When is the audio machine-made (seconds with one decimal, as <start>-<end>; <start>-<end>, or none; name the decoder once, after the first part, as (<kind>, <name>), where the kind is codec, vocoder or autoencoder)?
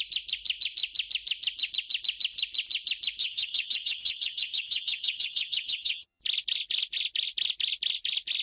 3.2-6.2 (vocoder, HiFi-GAN)